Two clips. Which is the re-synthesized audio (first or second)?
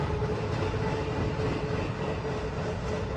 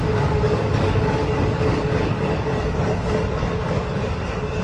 second